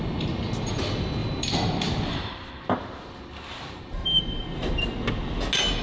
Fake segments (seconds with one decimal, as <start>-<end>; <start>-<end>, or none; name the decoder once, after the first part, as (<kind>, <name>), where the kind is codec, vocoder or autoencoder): 1.2-4.2 (vocoder, BigVGAN v2)